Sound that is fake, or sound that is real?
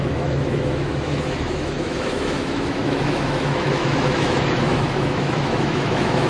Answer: fake